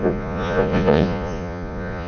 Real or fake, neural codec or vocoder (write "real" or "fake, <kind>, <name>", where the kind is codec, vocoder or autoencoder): fake, vocoder, Vocos